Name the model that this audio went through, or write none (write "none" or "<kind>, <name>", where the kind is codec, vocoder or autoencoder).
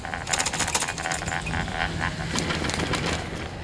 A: none